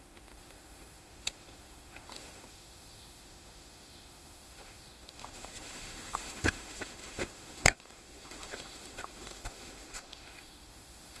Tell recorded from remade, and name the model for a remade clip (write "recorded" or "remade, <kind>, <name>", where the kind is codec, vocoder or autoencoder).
remade, autoencoder, DAC-VAE